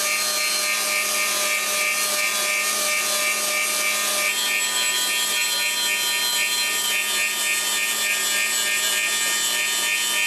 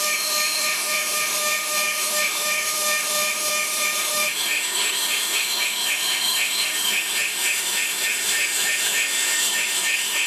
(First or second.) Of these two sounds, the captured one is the first